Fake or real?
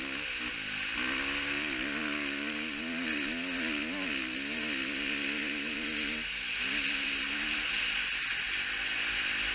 real